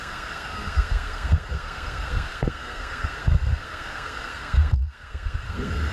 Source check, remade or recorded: remade